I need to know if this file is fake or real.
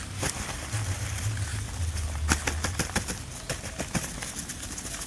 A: real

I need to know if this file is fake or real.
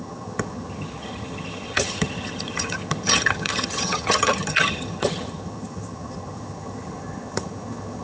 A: fake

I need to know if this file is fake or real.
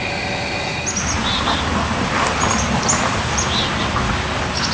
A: real